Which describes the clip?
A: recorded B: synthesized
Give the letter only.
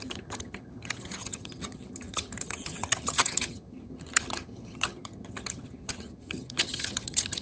B